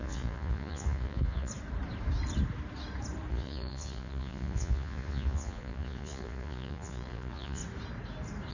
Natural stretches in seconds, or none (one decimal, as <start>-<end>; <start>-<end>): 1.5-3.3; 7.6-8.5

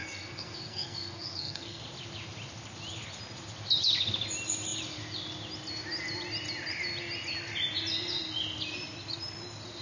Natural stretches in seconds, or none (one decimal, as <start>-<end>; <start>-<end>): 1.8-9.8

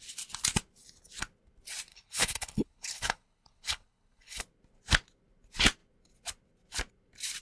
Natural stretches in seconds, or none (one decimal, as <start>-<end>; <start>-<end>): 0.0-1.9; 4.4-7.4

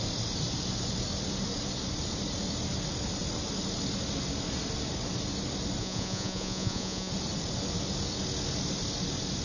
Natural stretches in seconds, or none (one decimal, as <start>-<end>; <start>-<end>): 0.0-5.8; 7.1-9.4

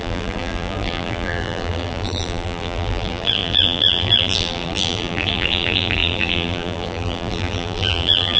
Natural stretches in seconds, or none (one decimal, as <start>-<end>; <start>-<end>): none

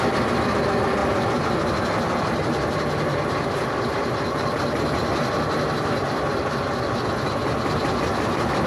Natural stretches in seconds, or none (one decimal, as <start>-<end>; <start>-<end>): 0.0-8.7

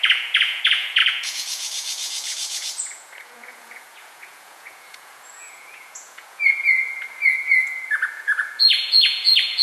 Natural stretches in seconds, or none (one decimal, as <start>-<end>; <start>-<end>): none